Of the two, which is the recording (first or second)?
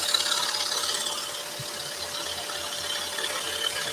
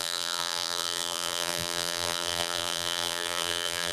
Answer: first